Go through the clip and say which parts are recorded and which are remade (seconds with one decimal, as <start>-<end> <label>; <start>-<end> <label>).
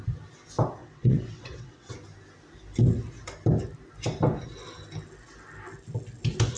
0.0-0.8 recorded; 0.8-1.9 remade; 1.9-6.6 recorded